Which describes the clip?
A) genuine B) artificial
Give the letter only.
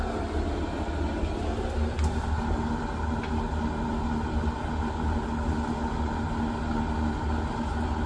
A